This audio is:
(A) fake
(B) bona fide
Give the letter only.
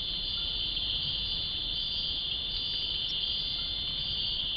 B